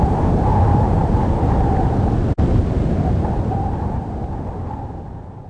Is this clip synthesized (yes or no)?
no